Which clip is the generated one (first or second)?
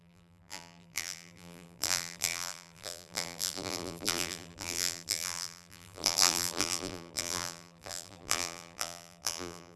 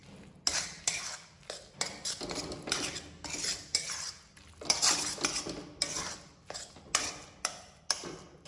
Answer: first